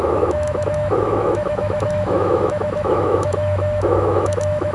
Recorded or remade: remade